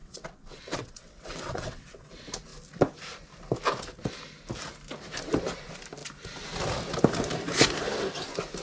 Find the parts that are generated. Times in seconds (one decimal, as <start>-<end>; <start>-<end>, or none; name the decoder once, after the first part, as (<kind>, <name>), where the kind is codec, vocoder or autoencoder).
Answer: 0.0-2.1 (vocoder, WaveNeXt)